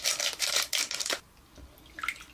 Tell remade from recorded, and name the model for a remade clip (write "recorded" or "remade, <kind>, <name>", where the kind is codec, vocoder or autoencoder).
remade, vocoder, BigVGAN v2